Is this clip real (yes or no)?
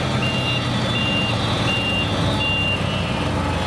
yes